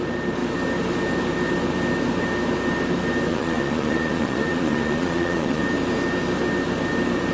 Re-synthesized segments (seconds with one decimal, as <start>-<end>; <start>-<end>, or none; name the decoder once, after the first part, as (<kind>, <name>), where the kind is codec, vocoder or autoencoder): 3.3-5.6 (vocoder, Vocos)